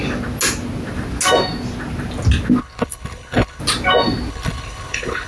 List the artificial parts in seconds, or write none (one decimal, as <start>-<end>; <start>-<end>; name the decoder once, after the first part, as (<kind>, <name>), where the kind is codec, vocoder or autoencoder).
2.6-3.6 (codec, HILCodec); 4.3-5.3